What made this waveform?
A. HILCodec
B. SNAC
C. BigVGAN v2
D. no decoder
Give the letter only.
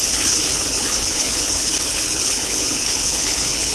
A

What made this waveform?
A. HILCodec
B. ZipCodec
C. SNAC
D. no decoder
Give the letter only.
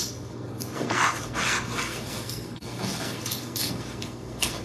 C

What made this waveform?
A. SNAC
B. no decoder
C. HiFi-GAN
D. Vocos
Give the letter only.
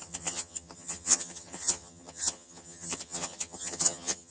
C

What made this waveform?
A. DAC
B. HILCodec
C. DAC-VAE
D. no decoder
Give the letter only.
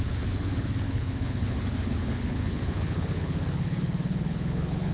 B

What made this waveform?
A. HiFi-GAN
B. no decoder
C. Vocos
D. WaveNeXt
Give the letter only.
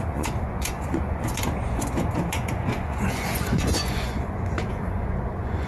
C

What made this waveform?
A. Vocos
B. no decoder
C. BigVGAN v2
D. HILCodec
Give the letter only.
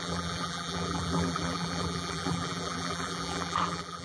C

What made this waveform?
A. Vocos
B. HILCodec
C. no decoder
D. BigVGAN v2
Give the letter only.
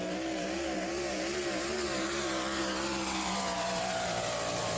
D